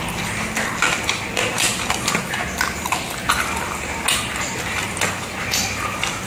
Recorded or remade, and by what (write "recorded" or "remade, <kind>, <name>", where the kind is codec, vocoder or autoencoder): recorded